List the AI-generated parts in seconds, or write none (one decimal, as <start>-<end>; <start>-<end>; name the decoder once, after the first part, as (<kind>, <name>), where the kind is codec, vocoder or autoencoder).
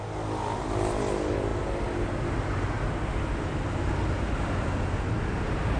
none